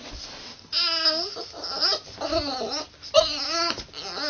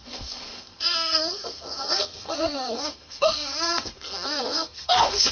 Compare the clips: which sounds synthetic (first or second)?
second